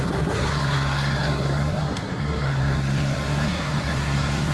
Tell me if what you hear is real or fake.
fake